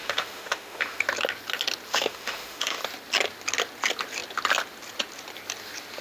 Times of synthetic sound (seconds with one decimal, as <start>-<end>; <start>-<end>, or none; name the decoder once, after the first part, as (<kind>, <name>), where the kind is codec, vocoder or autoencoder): 0.0-1.0 (autoencoder, DAC-VAE); 1.9-2.8